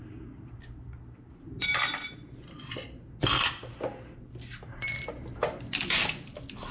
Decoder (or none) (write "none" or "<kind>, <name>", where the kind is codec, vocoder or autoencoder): none